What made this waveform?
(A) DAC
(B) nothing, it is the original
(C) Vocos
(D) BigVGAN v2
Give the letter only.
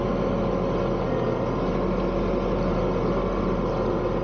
B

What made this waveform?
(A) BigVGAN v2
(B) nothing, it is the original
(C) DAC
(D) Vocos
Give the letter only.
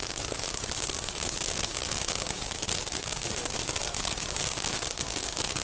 C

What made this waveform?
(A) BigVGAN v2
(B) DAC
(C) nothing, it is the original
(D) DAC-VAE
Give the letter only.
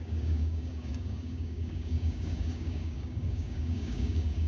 B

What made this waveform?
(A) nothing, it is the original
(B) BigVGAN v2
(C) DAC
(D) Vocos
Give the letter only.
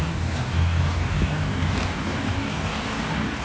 C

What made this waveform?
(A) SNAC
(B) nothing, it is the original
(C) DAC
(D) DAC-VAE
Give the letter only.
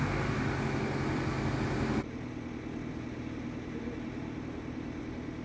B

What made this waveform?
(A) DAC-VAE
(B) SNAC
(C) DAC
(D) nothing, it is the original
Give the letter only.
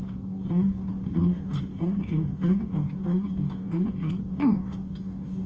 C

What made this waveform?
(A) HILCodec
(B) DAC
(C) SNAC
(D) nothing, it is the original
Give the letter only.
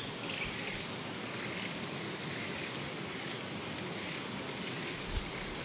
D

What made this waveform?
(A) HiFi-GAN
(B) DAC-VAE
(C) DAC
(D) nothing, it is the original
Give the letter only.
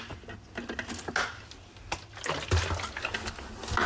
D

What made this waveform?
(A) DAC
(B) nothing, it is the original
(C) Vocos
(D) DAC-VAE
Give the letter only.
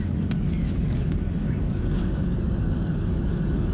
A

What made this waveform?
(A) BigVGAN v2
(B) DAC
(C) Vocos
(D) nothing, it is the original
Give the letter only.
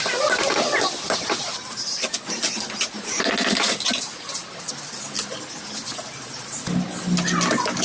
D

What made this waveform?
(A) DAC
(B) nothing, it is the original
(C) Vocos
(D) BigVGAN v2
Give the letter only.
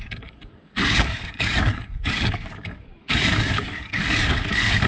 A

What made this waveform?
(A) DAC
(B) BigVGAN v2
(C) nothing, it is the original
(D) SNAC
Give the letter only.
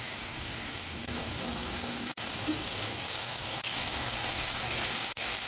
A